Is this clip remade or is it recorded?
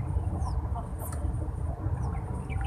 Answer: recorded